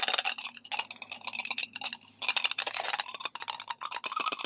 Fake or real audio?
real